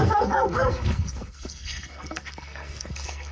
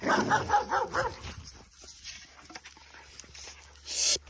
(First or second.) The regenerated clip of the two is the first